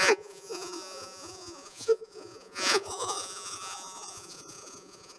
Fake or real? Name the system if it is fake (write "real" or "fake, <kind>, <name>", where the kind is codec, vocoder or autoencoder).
fake, vocoder, Vocos